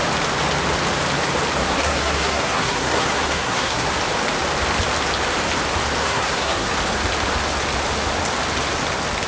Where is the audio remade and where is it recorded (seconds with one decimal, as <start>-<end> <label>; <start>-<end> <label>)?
0.0-1.6 recorded; 1.6-3.9 remade; 3.9-6.0 recorded; 6.0-6.7 remade; 6.7-9.3 recorded

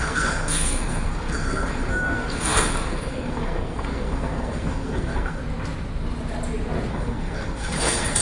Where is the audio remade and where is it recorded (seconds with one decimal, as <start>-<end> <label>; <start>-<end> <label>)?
0.0-5.4 remade; 5.4-6.9 recorded; 6.9-8.2 remade

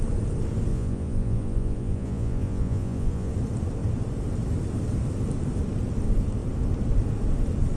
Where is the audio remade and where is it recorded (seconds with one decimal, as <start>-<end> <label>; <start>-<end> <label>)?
0.0-0.7 recorded; 0.7-3.3 remade; 3.3-7.8 recorded

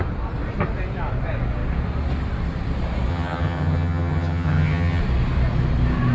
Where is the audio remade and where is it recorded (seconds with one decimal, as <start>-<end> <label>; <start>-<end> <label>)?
0.0-3.1 recorded; 3.1-5.0 remade; 5.0-6.1 recorded

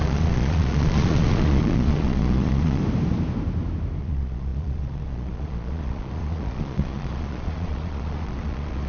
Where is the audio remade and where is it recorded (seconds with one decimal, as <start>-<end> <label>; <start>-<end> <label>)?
0.0-2.8 remade; 2.8-4.0 recorded; 4.0-8.9 remade

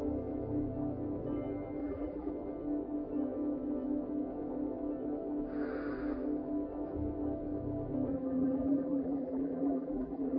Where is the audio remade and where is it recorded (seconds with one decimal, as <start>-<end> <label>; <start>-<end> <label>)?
0.0-1.8 recorded; 1.8-2.3 remade; 2.3-8.1 recorded; 8.1-10.4 remade